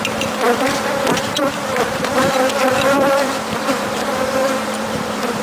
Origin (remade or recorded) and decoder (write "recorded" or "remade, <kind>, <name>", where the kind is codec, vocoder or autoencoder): remade, vocoder, BigVGAN v2